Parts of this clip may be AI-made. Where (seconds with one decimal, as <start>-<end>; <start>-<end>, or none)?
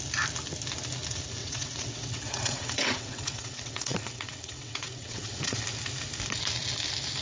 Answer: 1.4-5.6